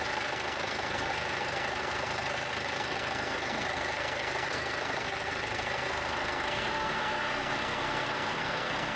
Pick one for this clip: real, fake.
fake